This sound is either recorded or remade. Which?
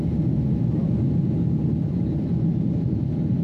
recorded